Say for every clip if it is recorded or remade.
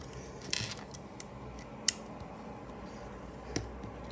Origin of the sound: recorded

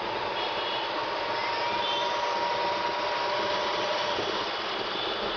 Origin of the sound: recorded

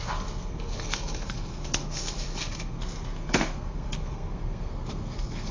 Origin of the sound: remade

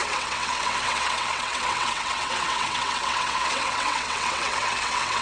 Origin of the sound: remade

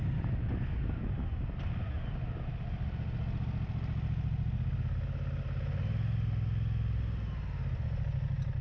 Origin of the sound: recorded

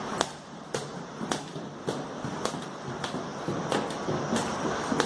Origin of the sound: recorded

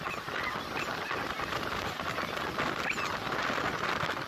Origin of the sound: recorded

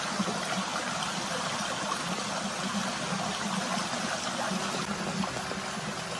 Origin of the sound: recorded